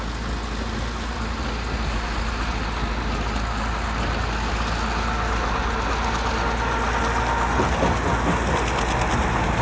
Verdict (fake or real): real